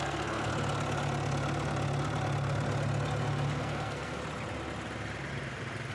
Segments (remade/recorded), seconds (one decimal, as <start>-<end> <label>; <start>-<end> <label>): 0.0-0.5 remade; 0.5-3.6 recorded; 3.6-4.2 remade; 4.2-5.9 recorded